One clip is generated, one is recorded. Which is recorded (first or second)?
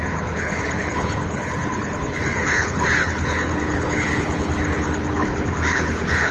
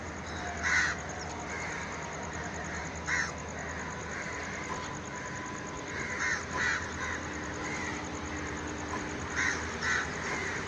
second